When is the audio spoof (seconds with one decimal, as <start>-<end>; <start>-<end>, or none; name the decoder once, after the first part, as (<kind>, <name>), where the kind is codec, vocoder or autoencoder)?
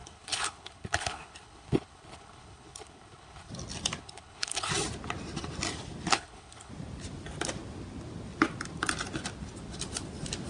0.0-3.5 (codec, HILCodec); 4.0-4.7; 6.1-6.7